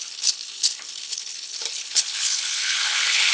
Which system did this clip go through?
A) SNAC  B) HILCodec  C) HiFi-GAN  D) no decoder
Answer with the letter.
B